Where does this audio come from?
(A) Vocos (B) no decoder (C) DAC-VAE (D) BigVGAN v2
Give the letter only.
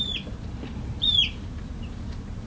D